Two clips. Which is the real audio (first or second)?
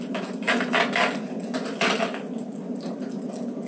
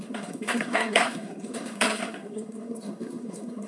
first